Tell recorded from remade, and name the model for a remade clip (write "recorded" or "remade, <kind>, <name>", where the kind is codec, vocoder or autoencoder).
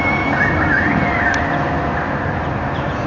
recorded